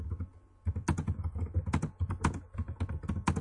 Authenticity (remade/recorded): recorded